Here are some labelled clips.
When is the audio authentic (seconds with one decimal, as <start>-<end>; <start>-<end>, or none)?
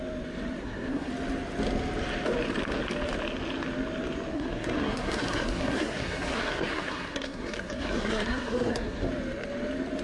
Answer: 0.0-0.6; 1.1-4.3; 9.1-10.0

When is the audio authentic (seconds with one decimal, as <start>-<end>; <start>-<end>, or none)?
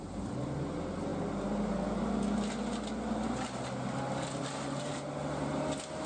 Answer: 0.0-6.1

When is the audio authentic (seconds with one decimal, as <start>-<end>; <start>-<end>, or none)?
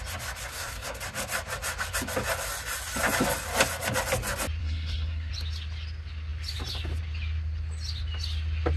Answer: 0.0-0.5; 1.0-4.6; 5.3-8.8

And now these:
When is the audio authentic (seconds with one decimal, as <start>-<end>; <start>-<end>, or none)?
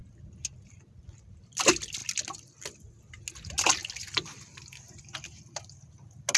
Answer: 0.0-6.4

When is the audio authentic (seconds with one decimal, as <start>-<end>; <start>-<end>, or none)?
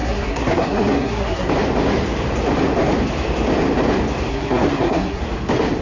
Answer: 1.5-4.3; 5.2-5.8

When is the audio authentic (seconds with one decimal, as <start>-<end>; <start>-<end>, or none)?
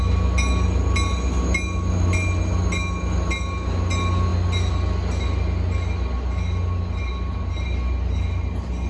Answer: 0.0-8.9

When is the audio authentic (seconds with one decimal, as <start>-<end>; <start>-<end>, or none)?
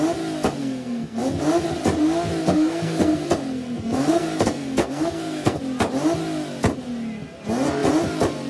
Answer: 0.0-0.6; 1.2-2.4; 5.6-8.5